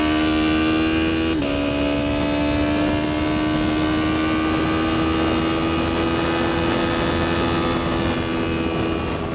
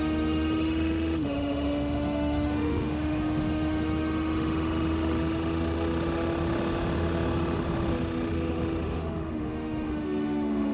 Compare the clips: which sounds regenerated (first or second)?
second